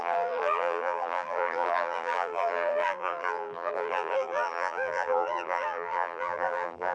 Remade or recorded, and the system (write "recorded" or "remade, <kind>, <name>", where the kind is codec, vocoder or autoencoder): remade, vocoder, BigVGAN v2